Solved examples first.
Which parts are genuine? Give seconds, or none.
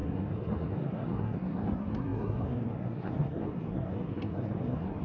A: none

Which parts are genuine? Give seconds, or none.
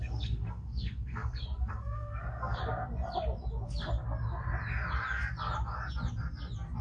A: 2.6-6.8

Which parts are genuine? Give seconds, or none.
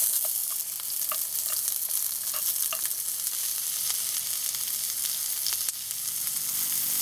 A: 0.0-7.0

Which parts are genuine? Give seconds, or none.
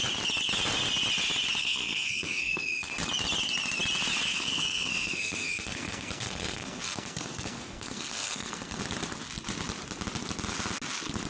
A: 0.0-1.6; 2.9-4.3; 8.8-11.3